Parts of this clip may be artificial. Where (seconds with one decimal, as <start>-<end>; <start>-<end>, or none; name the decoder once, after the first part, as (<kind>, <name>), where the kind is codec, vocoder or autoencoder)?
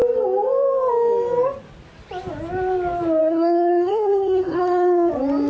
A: 3.2-5.1 (codec, SNAC)